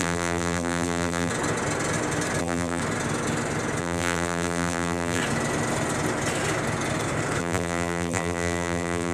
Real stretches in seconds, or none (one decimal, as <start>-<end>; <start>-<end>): 1.3-2.4; 2.8-3.8; 5.2-7.4